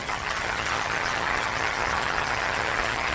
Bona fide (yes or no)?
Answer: no